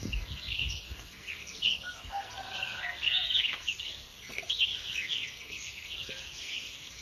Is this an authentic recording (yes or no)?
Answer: no